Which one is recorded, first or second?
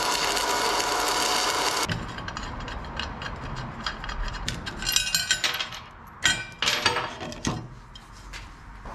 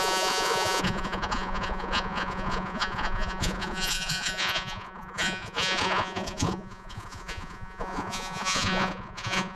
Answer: first